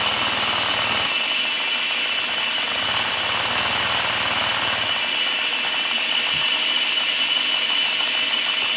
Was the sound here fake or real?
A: real